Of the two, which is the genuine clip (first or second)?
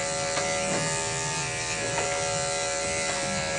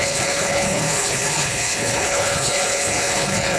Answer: first